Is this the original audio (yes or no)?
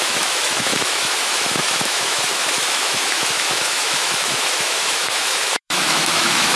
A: no